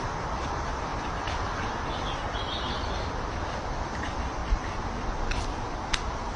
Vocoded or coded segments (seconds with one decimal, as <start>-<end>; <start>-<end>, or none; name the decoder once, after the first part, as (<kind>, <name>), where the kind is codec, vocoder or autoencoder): 0.0-0.9 (vocoder, BigVGAN v2); 3.7-4.4